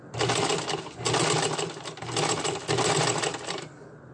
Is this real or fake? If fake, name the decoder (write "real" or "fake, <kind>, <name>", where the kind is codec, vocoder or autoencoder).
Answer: real